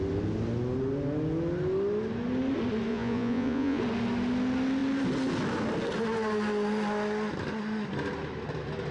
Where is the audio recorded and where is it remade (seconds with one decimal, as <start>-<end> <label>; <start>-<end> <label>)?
0.0-2.9 recorded; 2.9-3.8 remade; 3.8-8.9 recorded